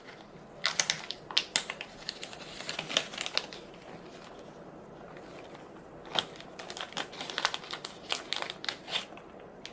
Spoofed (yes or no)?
no